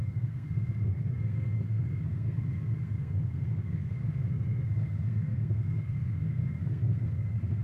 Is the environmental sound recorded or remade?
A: remade